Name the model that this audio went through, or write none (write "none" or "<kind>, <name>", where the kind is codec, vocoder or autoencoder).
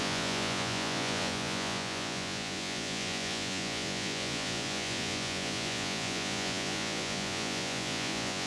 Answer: vocoder, Vocos